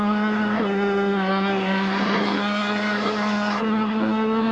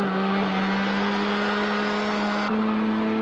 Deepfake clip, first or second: first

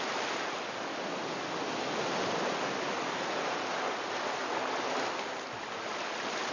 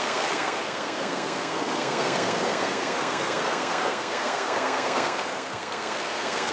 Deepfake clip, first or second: second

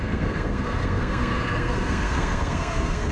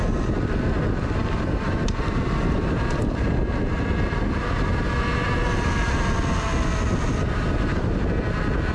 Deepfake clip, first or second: first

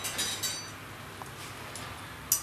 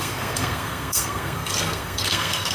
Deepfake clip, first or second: second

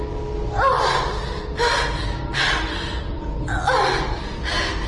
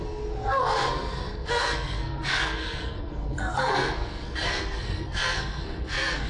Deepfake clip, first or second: second